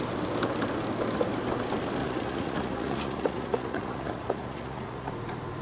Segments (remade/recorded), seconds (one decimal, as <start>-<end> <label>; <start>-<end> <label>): 0.0-2.0 recorded; 2.0-5.1 remade; 5.1-5.6 recorded